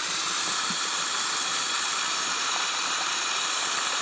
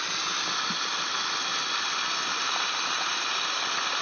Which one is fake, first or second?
first